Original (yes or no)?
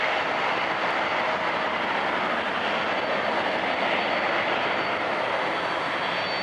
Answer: yes